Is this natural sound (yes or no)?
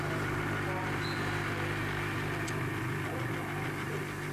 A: yes